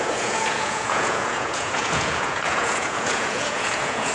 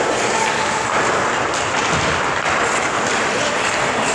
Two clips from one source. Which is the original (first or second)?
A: second